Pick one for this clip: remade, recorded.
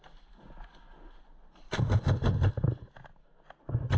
recorded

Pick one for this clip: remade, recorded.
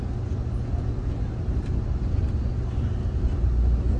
recorded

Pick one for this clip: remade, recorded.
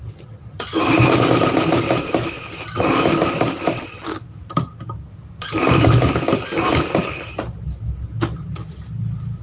remade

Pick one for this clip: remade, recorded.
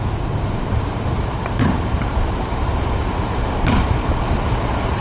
remade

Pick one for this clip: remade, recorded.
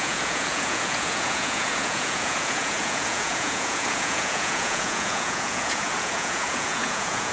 remade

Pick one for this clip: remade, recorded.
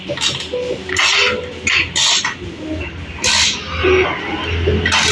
recorded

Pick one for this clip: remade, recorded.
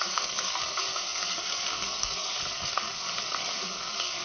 remade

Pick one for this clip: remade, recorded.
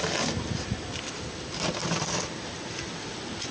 recorded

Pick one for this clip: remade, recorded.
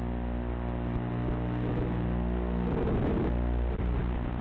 recorded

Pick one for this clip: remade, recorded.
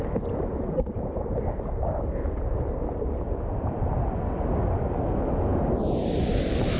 recorded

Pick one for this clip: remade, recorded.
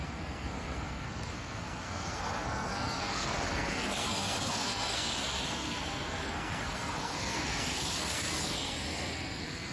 remade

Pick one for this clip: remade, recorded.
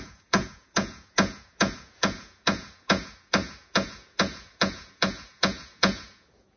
remade